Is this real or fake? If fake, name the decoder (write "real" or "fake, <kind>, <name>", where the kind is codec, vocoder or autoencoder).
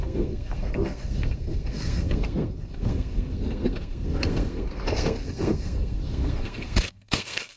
fake, codec, SNAC